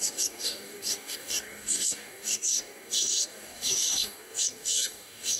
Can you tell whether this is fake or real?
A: fake